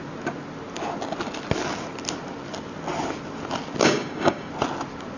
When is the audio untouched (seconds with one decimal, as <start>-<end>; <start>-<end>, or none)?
0.0-3.8; 4.5-5.2